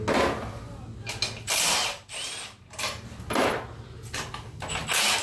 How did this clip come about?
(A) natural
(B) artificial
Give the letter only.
A